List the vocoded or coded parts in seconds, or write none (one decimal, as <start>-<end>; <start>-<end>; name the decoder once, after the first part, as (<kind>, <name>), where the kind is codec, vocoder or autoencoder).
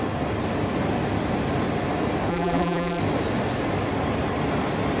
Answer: 2.3-3.0 (vocoder, BigVGAN v2)